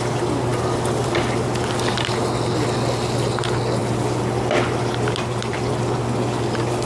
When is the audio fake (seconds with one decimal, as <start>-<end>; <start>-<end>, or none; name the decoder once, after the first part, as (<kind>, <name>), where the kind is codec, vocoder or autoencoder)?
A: none